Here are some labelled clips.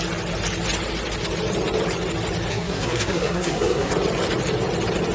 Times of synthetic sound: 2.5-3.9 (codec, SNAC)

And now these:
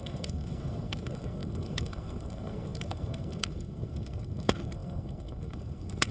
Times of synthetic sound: 0.0-6.1 (codec, SNAC)

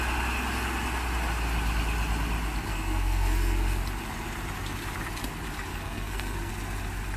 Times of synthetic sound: 2.7-3.8 (codec, SNAC); 5.7-6.5